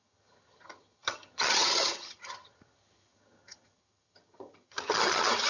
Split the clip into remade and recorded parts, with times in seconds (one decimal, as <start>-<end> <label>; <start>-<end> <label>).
0.0-5.5 remade